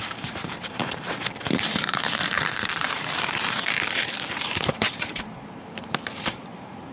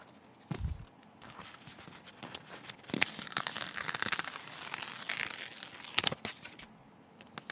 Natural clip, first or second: second